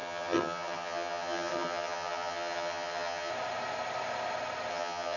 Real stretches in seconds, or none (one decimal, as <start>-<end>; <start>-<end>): 3.3-4.7